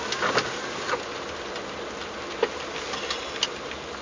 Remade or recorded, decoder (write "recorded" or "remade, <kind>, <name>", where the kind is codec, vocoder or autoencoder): recorded